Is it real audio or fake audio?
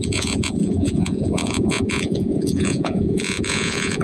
fake